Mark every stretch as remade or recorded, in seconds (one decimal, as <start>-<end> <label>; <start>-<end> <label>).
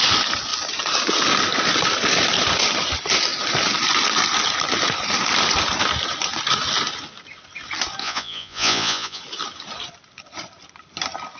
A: 0.0-8.0 recorded; 8.0-9.2 remade; 9.2-11.4 recorded